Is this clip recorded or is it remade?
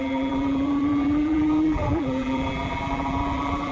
remade